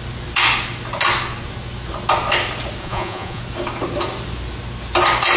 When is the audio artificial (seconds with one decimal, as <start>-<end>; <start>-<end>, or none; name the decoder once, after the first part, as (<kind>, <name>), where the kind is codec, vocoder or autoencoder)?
2.8-3.4 (vocoder, Vocos)